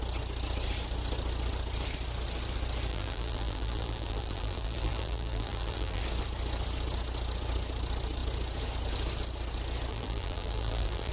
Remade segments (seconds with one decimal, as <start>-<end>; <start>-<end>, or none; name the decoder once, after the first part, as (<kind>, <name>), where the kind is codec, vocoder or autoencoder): 2.9-6.0 (vocoder, BigVGAN v2); 9.9-11.1